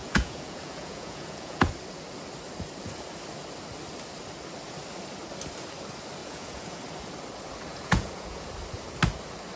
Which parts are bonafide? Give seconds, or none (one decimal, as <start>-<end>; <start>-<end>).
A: 1.7-6.2; 6.8-7.7; 8.5-9.6